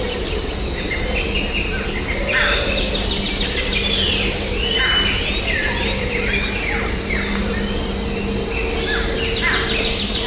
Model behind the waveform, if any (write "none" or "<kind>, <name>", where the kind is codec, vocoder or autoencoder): none